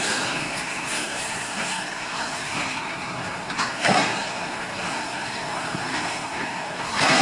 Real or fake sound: fake